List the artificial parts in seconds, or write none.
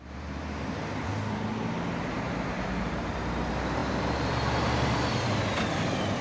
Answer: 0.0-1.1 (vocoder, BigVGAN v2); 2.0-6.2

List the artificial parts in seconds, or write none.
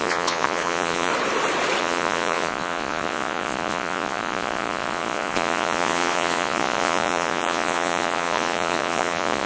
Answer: 0.0-1.1 (vocoder, Vocos); 1.8-9.5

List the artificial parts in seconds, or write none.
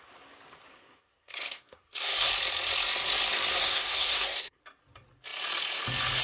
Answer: 0.7-2.3 (codec, SNAC); 3.6-4.6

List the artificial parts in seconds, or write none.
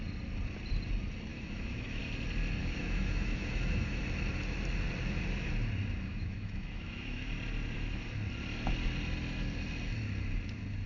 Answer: 1.3-2.0 (autoencoder, DAC-VAE); 2.6-4.0; 6.1-7.3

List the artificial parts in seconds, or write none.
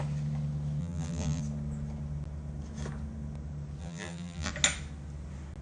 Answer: 0.8-1.4 (vocoder, BigVGAN v2); 3.8-4.5